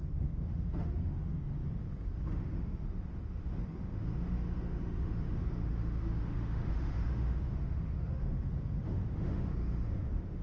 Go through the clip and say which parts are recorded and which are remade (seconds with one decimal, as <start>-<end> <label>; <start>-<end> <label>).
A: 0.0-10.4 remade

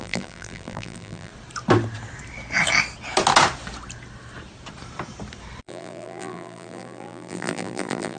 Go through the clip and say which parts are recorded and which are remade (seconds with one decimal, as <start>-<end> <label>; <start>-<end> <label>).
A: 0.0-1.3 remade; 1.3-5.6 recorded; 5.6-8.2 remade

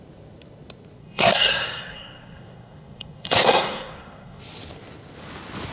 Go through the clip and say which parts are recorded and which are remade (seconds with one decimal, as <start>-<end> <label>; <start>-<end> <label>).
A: 0.0-1.0 recorded; 1.0-4.4 remade; 4.4-5.7 recorded

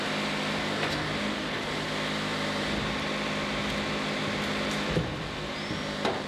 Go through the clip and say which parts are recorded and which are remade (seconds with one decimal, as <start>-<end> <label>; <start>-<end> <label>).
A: 0.0-6.3 recorded

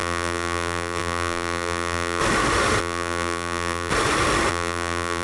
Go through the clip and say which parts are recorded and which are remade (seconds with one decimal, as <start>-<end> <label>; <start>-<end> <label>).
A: 0.0-2.2 remade; 2.2-2.8 recorded; 2.8-3.9 remade; 3.9-4.5 recorded; 4.5-5.2 remade